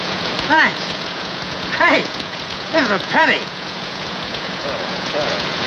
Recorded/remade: remade